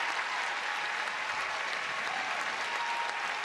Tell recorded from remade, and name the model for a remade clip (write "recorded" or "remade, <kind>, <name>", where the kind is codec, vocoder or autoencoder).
recorded